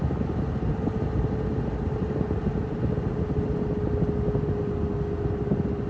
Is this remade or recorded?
recorded